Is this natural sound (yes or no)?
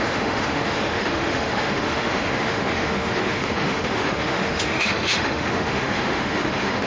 no